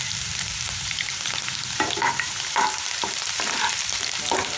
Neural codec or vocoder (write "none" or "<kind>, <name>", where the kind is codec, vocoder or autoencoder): vocoder, BigVGAN v2